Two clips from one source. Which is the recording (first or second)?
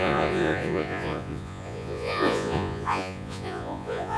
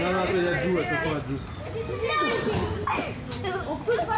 second